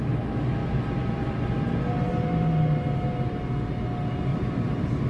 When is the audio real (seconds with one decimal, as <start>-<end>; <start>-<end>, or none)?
0.0-4.3